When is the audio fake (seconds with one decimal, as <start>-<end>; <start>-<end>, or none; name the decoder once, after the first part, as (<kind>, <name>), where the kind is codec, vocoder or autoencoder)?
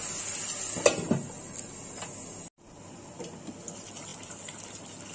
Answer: none